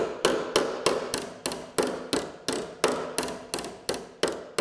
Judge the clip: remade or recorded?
recorded